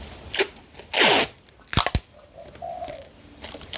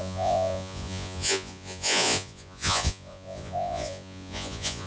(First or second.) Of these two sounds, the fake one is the second